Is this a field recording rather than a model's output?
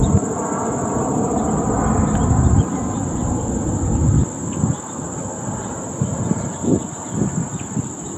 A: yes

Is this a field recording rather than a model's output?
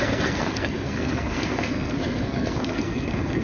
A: no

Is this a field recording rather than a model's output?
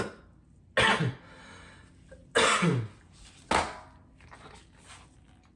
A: yes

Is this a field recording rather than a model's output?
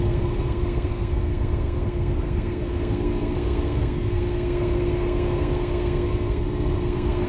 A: no